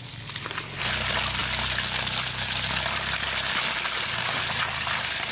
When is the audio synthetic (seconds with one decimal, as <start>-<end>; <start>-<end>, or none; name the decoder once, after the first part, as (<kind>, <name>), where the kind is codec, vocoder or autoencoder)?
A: none